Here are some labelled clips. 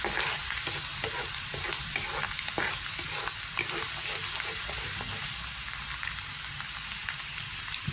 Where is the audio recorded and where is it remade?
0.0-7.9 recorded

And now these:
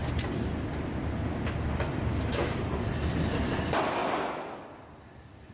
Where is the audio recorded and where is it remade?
0.0-5.5 recorded

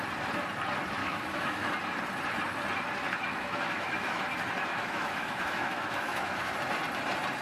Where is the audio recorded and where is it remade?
0.0-1.0 recorded; 1.0-1.7 remade; 1.7-3.3 recorded; 3.3-4.2 remade; 4.2-4.7 recorded; 4.7-6.5 remade; 6.5-7.4 recorded

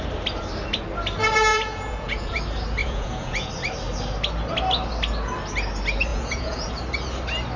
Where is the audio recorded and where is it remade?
0.0-1.5 recorded; 1.5-2.4 remade; 2.4-2.8 recorded; 2.8-3.5 remade; 3.5-6.1 recorded; 6.1-6.7 remade; 6.7-7.6 recorded

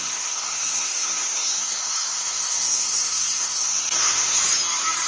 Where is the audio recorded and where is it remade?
0.0-4.4 remade; 4.4-5.1 recorded